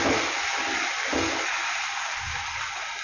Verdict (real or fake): real